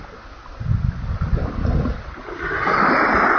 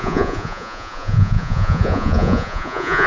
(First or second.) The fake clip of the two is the second